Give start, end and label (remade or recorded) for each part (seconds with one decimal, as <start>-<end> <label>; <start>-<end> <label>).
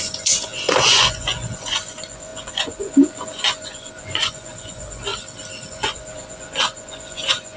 0.0-5.1 remade; 5.1-5.7 recorded; 5.7-7.6 remade